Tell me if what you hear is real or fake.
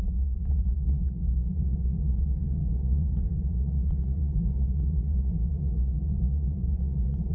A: fake